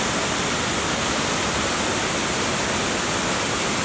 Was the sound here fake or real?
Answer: real